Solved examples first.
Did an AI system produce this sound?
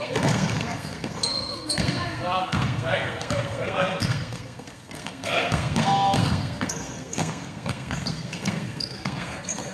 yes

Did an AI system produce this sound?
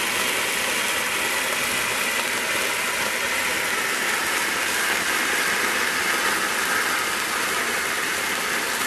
no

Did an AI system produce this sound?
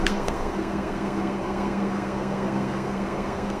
yes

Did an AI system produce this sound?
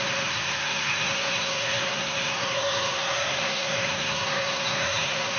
yes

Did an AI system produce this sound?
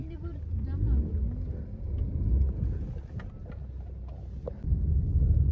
no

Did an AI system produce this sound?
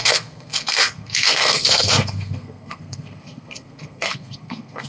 yes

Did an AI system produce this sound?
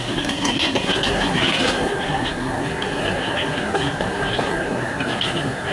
yes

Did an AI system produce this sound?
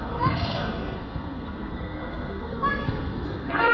yes